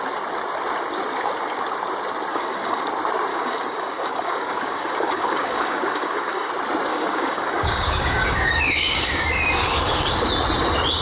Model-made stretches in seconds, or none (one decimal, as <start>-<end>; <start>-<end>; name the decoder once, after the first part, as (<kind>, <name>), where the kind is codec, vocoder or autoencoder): 2.3-2.8 (codec, DAC); 3.3-6.5; 6.9-10.1